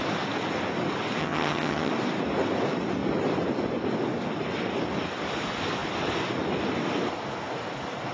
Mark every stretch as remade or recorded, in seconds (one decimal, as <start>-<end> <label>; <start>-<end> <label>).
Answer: 0.0-1.2 recorded; 1.2-1.9 remade; 1.9-8.1 recorded